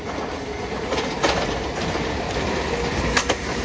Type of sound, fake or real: real